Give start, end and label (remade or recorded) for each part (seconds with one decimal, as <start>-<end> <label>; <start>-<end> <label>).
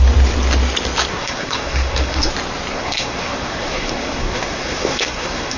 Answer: 0.0-1.1 recorded; 1.1-2.3 remade; 2.3-2.7 recorded; 2.7-5.6 remade